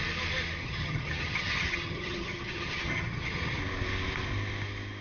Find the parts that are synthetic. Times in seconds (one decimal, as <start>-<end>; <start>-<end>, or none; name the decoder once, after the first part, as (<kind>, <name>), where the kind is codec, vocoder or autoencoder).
0.6-3.6 (vocoder, HiFi-GAN)